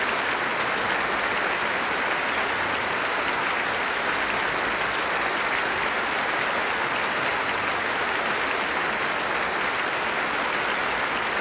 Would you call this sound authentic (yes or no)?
yes